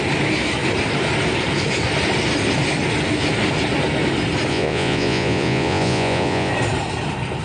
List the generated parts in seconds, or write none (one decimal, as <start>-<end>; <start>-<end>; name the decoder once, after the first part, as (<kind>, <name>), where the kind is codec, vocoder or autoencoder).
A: 4.5-6.5 (vocoder, Vocos)